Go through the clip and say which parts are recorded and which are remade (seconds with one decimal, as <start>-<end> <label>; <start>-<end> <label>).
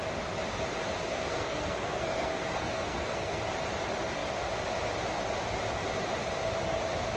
0.0-1.1 recorded; 1.1-3.4 remade; 3.4-7.2 recorded